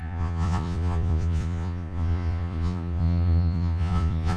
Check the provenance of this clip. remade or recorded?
remade